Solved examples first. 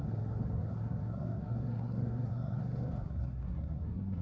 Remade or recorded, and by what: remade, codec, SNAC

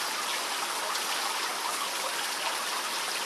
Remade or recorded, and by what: recorded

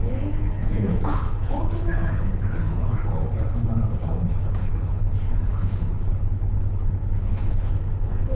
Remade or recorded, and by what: remade, codec, HILCodec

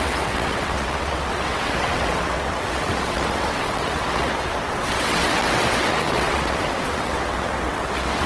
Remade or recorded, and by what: remade, vocoder, WaveNeXt